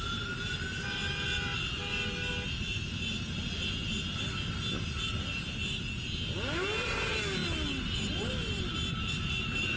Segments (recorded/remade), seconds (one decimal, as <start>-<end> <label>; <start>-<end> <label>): 0.0-9.8 recorded